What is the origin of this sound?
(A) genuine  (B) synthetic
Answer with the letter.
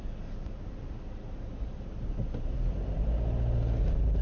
A